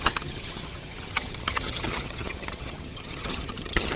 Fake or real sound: fake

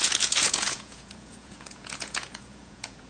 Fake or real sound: fake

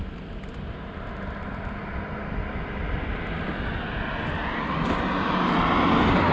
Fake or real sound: real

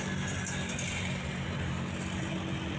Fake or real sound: real